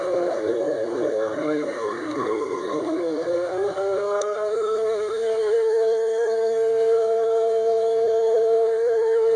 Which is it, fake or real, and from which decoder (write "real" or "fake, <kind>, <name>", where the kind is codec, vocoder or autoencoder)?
fake, codec, SNAC